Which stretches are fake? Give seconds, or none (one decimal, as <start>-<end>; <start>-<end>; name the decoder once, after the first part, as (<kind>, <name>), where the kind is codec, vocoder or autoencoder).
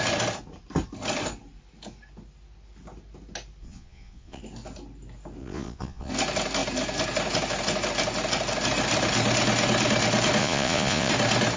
3.6-4.4 (vocoder, Vocos); 5.4-6.1; 10.4-11.1